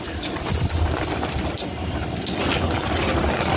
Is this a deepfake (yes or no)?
no